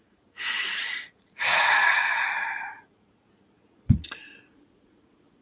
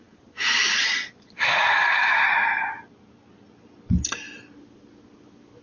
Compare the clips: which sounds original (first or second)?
second